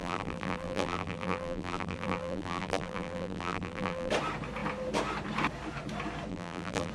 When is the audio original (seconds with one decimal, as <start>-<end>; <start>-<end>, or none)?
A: 4.1-6.3